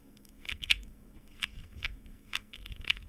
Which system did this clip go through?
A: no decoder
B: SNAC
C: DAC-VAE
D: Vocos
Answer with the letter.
B